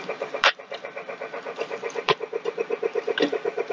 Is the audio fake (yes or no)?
yes